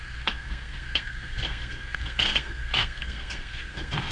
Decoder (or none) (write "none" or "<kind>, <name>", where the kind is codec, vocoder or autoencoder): codec, SNAC